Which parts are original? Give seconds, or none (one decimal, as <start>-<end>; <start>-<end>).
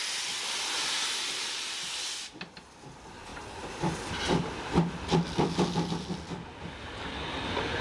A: 0.0-7.8